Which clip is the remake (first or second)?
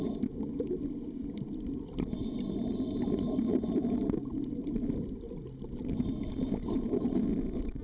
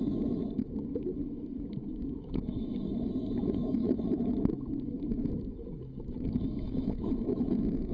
second